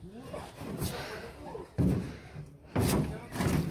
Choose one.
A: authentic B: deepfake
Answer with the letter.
A